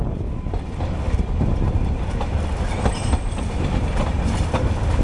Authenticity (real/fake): real